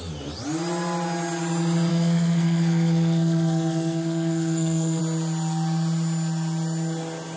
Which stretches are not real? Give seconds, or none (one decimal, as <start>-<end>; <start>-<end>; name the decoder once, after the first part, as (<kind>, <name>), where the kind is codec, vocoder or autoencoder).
1.9-5.0 (codec, SNAC)